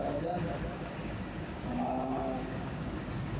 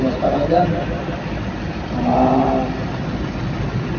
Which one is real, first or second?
second